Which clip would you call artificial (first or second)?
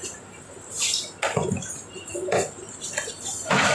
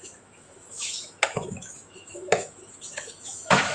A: second